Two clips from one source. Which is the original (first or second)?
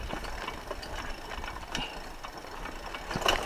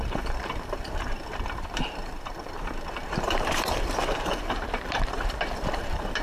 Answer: first